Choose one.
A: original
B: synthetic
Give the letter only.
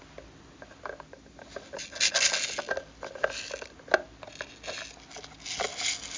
A